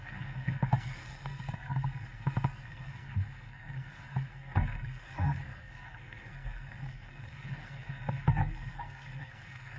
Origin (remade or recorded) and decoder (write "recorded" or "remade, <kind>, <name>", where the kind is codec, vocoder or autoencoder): remade, codec, SNAC